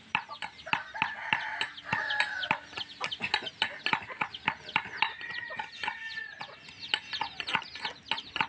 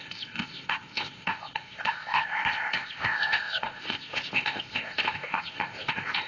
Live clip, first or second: first